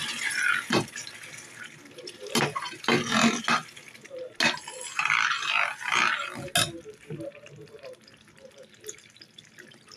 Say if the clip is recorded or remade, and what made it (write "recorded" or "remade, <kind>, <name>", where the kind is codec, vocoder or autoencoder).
recorded